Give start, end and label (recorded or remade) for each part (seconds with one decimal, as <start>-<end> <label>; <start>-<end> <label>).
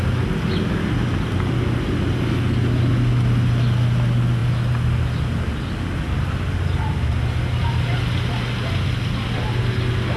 0.0-10.2 recorded